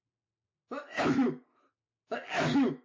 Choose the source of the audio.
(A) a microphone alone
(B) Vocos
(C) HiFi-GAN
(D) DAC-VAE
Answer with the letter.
D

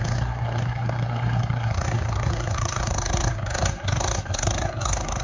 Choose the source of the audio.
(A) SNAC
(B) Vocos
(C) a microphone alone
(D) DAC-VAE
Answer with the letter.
A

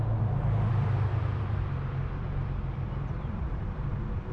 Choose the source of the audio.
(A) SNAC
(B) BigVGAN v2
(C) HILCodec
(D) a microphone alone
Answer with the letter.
B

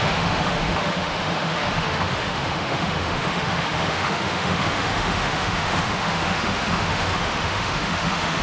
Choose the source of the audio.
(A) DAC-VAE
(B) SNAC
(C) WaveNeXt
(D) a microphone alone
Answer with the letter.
A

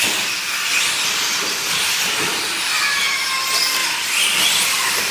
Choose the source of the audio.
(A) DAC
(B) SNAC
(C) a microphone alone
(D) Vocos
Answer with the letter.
C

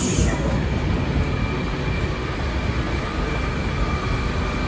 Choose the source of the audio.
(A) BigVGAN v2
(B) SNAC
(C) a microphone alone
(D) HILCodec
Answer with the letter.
C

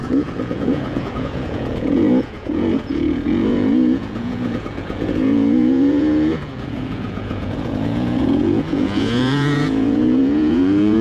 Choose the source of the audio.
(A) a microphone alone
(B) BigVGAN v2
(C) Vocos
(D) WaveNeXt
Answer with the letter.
C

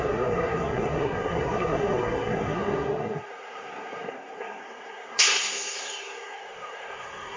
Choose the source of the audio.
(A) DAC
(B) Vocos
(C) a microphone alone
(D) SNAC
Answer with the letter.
D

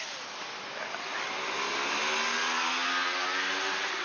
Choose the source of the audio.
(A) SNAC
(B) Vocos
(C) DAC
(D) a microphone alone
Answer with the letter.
D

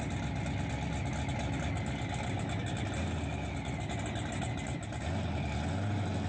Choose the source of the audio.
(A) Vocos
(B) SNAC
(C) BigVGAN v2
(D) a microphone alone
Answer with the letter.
D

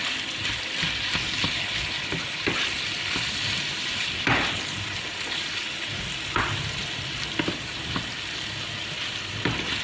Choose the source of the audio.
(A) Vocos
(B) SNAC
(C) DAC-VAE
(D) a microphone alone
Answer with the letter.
D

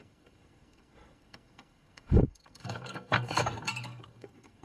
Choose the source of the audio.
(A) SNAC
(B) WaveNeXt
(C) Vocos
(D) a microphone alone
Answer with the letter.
A